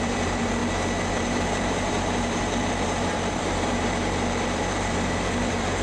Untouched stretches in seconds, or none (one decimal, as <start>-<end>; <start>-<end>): 0.6-1.1